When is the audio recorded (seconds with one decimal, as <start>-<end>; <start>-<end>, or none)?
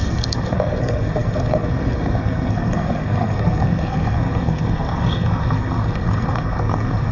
none